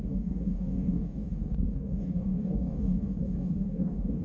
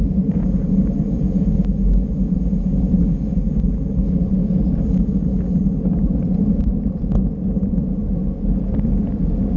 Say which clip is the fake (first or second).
first